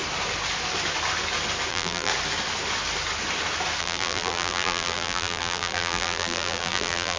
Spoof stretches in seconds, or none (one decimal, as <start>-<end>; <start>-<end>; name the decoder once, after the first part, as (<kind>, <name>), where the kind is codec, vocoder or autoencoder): 1.7-2.1 (vocoder, BigVGAN v2); 3.8-7.2